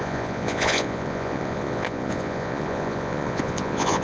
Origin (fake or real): fake